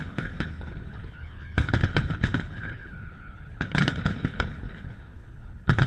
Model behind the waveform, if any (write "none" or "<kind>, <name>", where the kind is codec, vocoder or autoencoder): codec, HILCodec